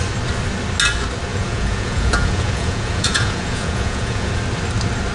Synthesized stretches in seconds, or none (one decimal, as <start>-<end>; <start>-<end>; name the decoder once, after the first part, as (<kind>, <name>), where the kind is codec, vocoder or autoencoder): 1.3-4.4 (vocoder, Vocos)